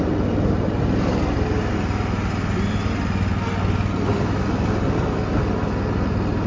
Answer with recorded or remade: recorded